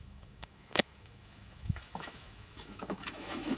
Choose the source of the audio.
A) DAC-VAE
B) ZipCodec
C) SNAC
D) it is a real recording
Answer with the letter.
A